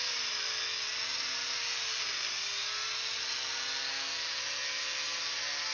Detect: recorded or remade recorded